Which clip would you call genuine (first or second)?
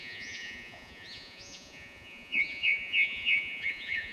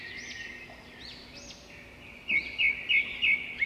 second